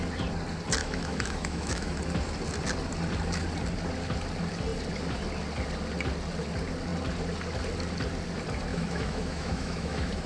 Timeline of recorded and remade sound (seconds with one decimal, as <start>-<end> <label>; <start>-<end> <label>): 0.0-0.8 recorded; 0.8-2.0 remade; 2.0-8.7 recorded; 8.7-10.3 remade